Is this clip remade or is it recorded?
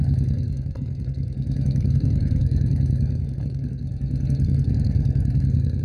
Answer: remade